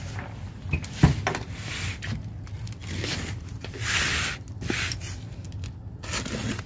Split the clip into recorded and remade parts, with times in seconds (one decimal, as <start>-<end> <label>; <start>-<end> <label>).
0.0-6.7 recorded